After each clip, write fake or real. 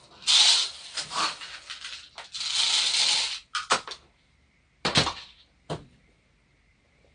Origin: real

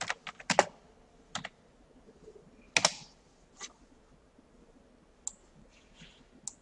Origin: real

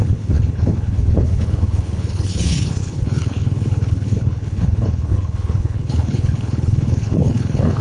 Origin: fake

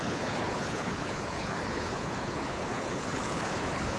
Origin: fake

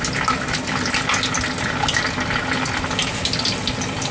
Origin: real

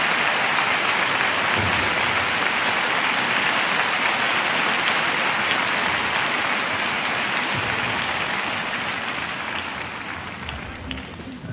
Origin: real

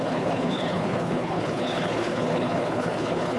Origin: fake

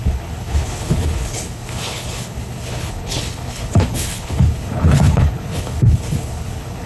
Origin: fake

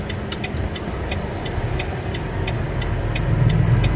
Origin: real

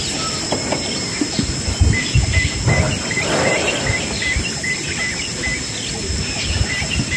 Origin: real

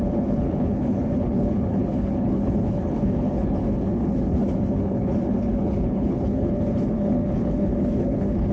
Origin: fake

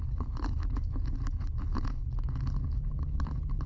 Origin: fake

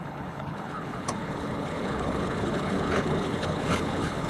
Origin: fake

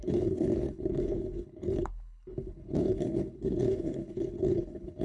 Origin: fake